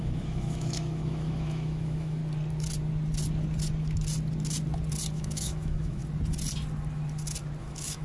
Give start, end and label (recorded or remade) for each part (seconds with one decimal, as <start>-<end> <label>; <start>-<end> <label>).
0.0-2.2 remade; 2.2-5.1 recorded; 5.1-6.0 remade; 6.0-7.6 recorded; 7.6-8.0 remade